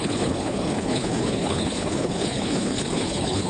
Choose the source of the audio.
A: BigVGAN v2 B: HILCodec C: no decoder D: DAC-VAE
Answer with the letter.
B